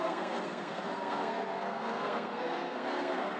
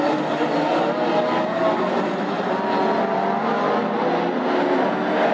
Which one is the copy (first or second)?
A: first